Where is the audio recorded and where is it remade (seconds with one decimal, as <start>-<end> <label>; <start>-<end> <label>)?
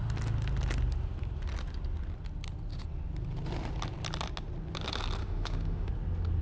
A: 0.0-5.2 recorded; 5.2-5.9 remade; 5.9-6.4 recorded